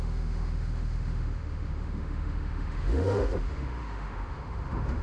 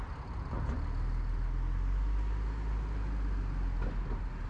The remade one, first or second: first